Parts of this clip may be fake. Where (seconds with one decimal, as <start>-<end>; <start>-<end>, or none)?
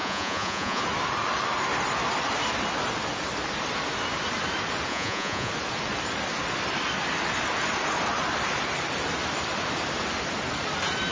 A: 0.0-0.8; 4.9-5.5